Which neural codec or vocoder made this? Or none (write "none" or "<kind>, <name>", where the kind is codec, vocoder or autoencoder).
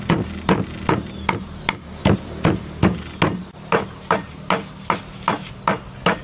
none